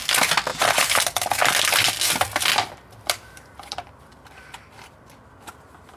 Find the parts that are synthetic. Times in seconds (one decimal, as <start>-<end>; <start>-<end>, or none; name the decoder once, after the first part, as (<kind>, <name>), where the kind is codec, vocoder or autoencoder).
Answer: 0.5-1.7 (vocoder, BigVGAN v2); 2.5-6.0